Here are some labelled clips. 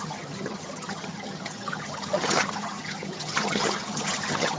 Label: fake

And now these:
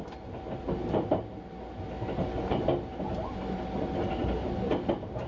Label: real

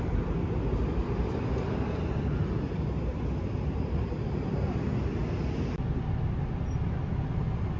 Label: real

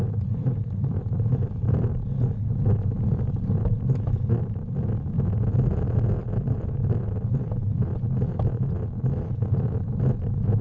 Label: real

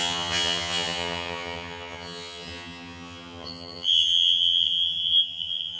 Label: fake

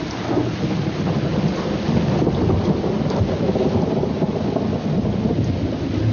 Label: real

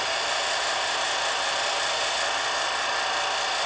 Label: real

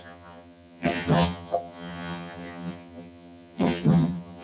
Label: fake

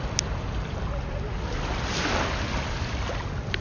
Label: real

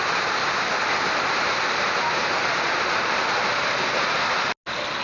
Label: real